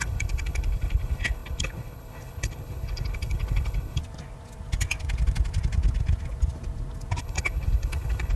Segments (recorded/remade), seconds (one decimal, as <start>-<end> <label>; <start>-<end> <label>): 0.0-4.0 remade; 4.0-7.2 recorded; 7.2-8.4 remade